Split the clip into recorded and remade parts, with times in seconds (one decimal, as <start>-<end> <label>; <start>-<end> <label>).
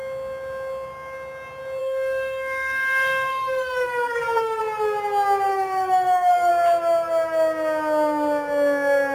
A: 0.0-1.8 recorded; 1.8-4.6 remade; 4.6-5.5 recorded; 5.5-6.5 remade; 6.5-9.1 recorded